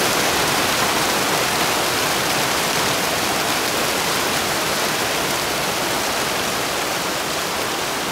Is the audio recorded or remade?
recorded